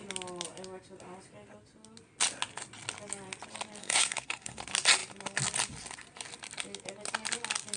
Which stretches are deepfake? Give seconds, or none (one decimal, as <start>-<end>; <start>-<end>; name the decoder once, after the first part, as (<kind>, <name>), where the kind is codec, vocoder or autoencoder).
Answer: 3.8-4.6 (codec, SNAC)